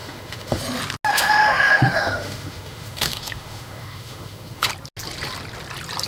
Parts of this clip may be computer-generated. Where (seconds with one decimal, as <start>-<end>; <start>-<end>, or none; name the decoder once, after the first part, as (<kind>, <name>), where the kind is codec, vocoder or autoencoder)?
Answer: 0.0-0.6 (autoencoder, DAC-VAE); 1.1-4.7